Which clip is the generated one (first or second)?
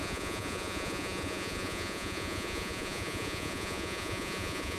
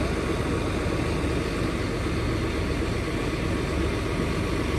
first